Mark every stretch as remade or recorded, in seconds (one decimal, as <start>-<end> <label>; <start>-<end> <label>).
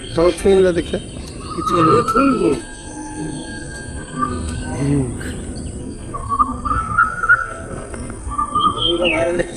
0.0-0.6 remade; 0.6-1.7 recorded; 1.7-4.6 remade; 4.6-5.8 recorded; 5.8-9.6 remade